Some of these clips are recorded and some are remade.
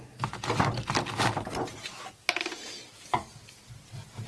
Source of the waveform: recorded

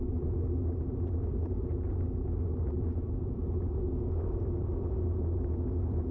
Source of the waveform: recorded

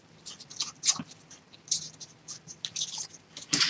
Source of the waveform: recorded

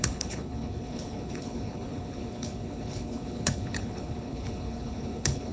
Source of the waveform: remade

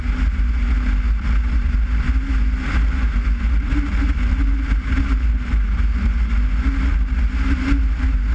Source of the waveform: recorded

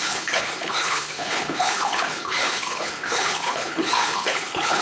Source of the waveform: remade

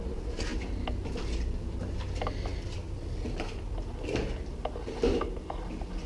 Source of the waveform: recorded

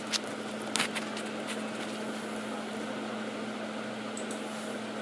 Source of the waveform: recorded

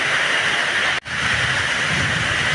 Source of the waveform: recorded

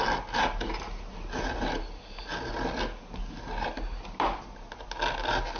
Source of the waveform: recorded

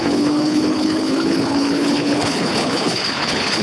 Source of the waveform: remade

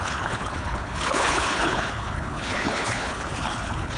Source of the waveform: remade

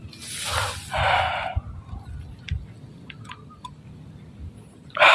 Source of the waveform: recorded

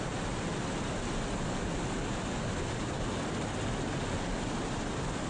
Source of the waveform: recorded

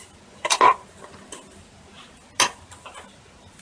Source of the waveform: recorded